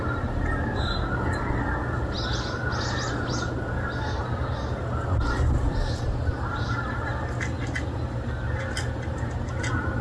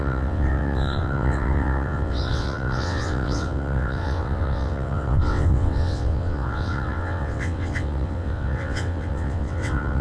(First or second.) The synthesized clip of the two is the second